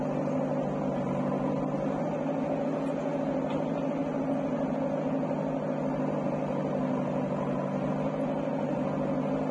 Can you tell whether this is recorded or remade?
recorded